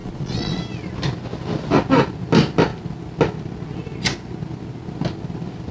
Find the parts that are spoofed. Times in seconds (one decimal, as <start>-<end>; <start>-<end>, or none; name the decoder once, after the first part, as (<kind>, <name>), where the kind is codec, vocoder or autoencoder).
0.0-0.6 (vocoder, Vocos)